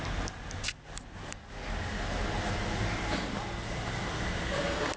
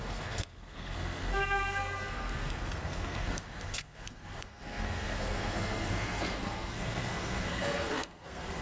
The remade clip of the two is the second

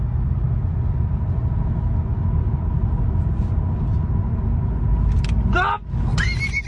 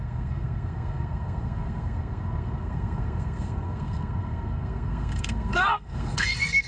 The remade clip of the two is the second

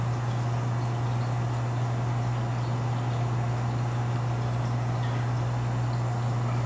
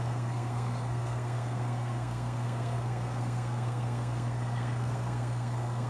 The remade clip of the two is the second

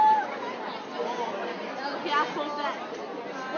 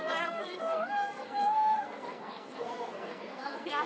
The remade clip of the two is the second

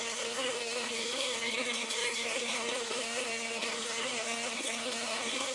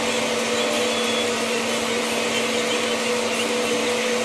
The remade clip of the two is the first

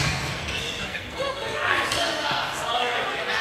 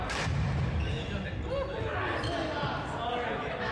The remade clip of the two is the first